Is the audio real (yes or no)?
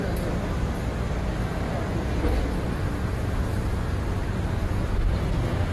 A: yes